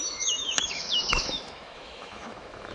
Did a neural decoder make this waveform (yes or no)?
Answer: yes